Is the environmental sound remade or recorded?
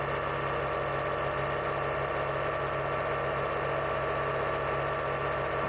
recorded